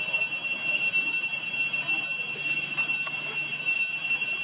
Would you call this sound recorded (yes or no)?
yes